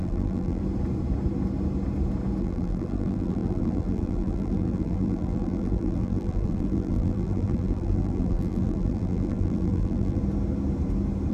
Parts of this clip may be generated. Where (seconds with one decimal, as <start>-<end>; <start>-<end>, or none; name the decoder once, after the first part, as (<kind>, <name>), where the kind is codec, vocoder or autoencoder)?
0.0-0.6 (vocoder, BigVGAN v2); 2.4-10.2